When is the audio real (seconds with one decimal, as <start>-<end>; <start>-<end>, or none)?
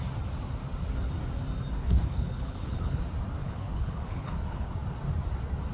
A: 0.0-1.8; 3.0-3.4; 4.7-5.7